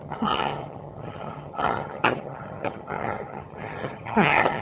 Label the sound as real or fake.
fake